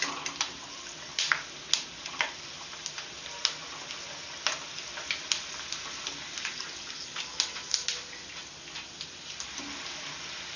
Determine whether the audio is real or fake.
real